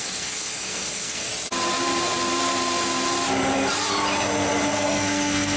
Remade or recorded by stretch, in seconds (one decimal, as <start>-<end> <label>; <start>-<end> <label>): 0.0-1.3 remade; 1.3-4.7 recorded; 4.7-5.6 remade